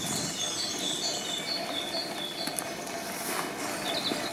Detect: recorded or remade recorded